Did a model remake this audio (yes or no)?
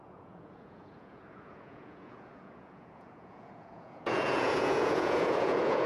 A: yes